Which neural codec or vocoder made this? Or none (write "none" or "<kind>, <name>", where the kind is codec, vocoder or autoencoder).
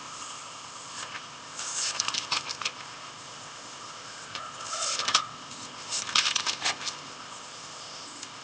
codec, ZipCodec